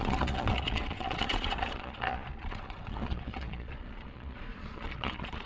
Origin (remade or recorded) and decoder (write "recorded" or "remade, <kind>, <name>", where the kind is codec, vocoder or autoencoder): remade, vocoder, Vocos